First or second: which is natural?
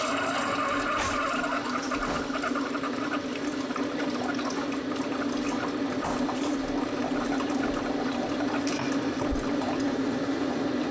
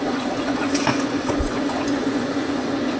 first